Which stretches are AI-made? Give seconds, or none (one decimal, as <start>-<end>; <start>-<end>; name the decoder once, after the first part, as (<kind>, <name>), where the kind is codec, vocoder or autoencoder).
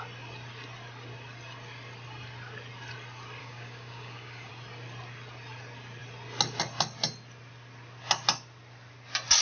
3.4-4.5 (codec, DAC)